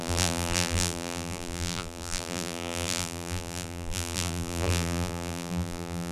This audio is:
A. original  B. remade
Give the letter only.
B